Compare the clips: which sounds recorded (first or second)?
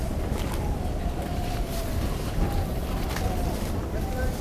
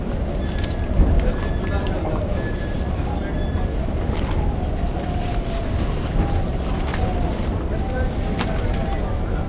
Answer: second